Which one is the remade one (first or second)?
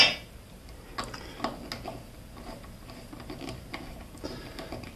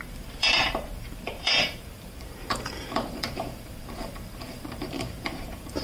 second